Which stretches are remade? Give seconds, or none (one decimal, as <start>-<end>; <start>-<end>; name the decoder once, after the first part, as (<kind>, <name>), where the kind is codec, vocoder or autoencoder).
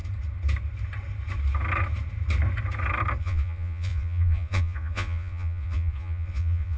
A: 3.2-6.8 (vocoder, Vocos)